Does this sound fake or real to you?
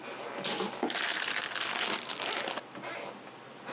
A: real